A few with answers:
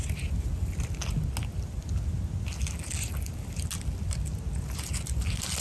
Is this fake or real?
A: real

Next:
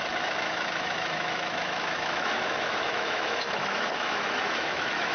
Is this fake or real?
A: fake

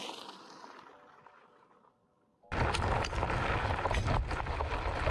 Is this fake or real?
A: real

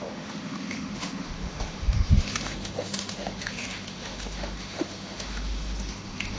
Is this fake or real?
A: fake